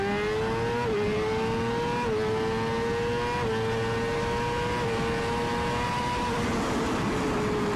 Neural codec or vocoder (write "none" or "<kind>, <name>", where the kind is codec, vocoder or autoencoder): none